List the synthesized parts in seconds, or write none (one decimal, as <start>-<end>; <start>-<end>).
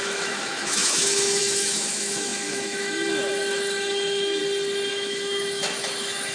0.0-4.4; 4.9-6.3